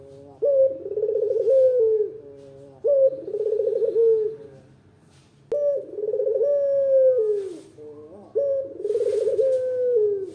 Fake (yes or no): no